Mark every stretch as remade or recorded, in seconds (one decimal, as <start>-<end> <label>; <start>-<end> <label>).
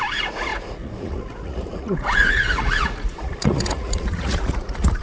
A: 0.0-5.0 remade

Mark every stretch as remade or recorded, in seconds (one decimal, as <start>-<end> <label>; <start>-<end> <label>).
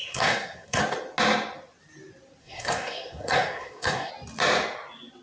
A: 0.0-0.8 remade; 0.8-2.4 recorded; 2.4-4.1 remade; 4.1-5.2 recorded